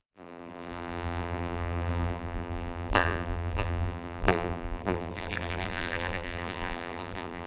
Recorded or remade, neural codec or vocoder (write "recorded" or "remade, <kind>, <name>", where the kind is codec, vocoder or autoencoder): remade, vocoder, BigVGAN v2